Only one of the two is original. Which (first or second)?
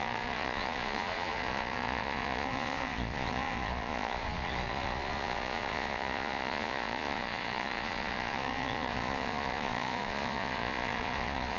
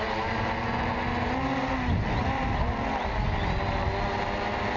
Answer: second